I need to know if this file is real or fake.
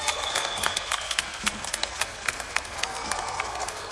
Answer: fake